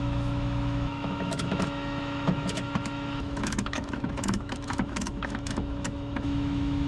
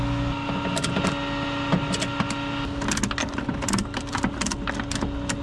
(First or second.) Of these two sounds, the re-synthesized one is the first